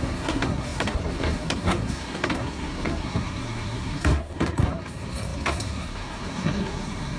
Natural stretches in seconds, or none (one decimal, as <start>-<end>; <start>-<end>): none